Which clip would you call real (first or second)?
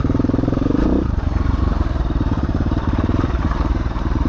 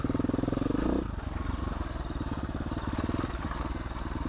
second